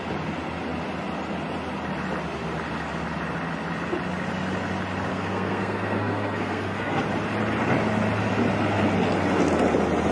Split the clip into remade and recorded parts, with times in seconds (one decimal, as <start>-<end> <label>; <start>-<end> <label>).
0.0-5.1 recorded; 5.1-7.0 remade; 7.0-10.1 recorded